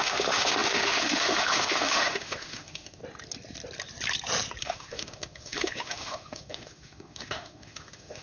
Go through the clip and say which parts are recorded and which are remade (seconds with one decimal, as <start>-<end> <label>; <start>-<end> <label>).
0.0-3.0 remade; 3.0-4.6 recorded; 4.6-8.2 remade